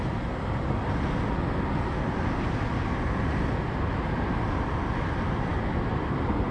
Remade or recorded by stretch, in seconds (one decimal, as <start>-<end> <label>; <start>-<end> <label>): 0.0-6.5 recorded